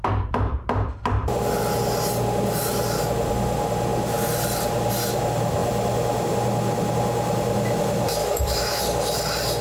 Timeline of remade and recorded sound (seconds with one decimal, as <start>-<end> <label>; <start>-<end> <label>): 0.0-8.2 recorded; 8.2-8.8 remade; 8.8-9.6 recorded